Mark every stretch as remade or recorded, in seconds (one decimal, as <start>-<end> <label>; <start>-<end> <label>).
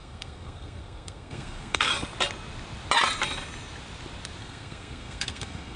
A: 0.0-1.9 remade; 1.9-4.4 recorded; 4.4-5.8 remade